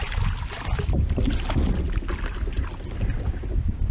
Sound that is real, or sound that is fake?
real